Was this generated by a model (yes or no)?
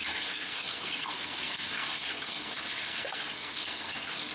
yes